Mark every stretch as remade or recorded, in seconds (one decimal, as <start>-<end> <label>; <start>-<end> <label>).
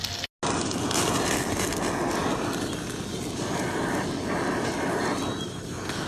0.0-6.1 recorded